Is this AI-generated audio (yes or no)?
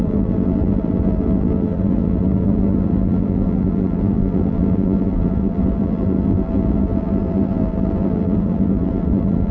yes